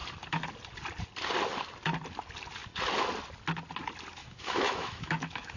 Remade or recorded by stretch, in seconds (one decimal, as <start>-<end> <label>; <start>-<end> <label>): 0.0-4.2 recorded; 4.2-5.6 remade